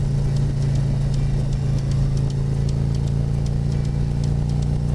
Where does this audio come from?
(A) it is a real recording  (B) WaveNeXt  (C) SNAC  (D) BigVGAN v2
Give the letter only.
A